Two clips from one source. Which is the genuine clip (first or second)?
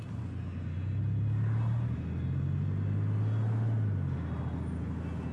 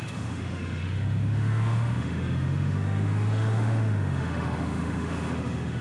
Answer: first